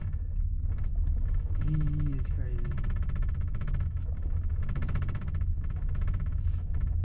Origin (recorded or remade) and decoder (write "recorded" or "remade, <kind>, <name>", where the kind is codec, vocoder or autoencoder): remade, autoencoder, DAC-VAE